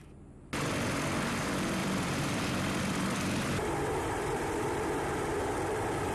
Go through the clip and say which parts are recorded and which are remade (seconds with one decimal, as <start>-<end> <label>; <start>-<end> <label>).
0.0-1.8 recorded; 1.8-5.5 remade; 5.5-6.1 recorded